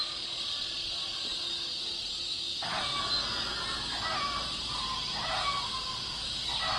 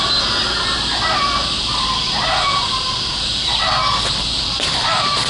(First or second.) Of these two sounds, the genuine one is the first